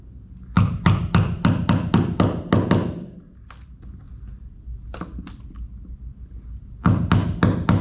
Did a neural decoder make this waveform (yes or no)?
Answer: no